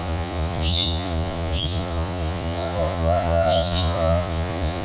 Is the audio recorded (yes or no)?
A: no